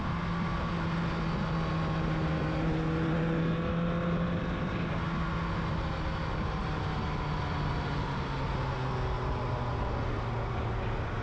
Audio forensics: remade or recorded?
recorded